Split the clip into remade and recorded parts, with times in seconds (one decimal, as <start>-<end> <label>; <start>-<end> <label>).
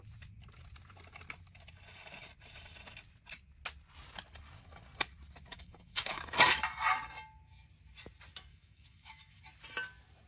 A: 0.0-5.5 recorded; 5.5-6.6 remade; 6.6-8.5 recorded; 8.5-9.4 remade; 9.4-10.3 recorded